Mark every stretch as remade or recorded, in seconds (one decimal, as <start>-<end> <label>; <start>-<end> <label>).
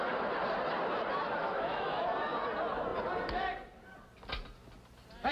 0.0-1.4 recorded; 1.4-2.0 remade; 2.0-5.3 recorded